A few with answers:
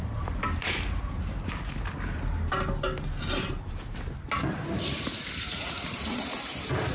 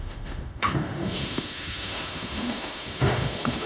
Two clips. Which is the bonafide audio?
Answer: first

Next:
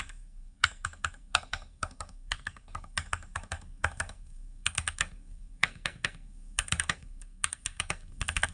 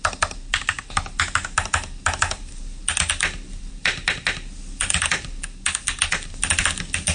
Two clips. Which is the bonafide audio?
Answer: second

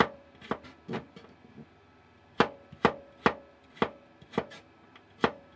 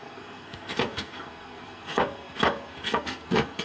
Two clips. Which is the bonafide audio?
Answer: first